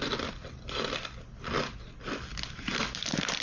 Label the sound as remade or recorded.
recorded